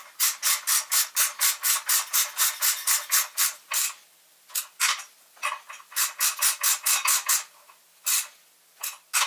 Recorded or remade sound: recorded